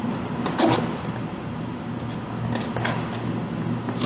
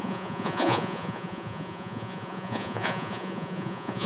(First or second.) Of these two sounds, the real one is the first